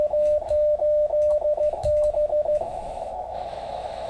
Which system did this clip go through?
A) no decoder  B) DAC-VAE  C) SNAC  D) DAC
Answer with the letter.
B